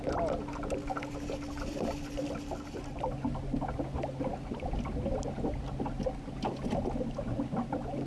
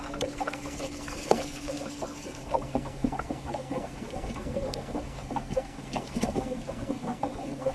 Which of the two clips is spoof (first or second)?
second